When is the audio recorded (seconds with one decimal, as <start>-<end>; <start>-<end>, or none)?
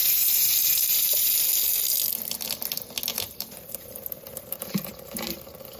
1.3-3.1